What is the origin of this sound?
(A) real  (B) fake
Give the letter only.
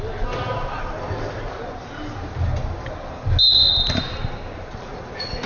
A